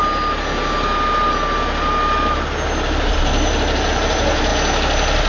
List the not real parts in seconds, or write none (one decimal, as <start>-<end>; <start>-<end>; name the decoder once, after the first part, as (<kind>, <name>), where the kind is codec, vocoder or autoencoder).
3.2-4.5 (vocoder, BigVGAN v2)